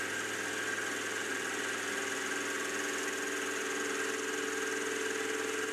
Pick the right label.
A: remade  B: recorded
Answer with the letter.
B